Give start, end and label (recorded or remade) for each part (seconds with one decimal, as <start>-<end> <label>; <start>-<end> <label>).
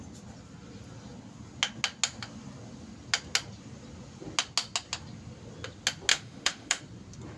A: 0.0-6.1 recorded; 6.1-6.8 remade; 6.8-7.4 recorded